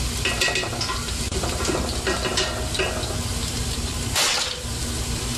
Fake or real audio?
real